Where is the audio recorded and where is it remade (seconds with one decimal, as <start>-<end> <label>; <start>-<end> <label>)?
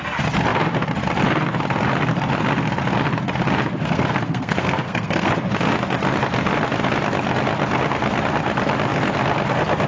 0.0-3.8 recorded; 3.8-5.3 remade; 5.3-9.9 recorded